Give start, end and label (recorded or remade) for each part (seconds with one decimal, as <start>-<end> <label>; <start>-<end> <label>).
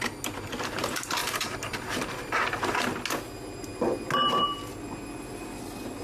0.0-1.2 recorded; 1.2-2.8 remade; 2.8-6.0 recorded